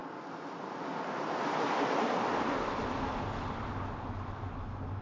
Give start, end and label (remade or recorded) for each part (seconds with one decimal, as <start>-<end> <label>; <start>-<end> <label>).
0.0-5.0 recorded